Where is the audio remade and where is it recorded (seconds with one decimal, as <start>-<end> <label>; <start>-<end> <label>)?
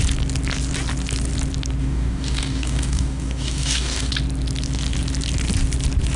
0.0-1.8 recorded; 1.8-4.1 remade; 4.1-6.2 recorded